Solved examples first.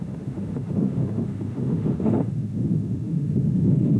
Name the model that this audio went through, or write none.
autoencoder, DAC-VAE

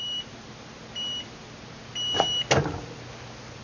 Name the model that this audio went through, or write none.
none